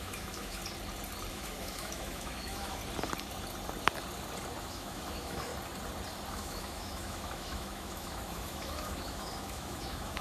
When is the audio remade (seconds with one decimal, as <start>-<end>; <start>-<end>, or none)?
0.0-0.6; 1.3-2.8; 4.6-5.5; 6.3-10.2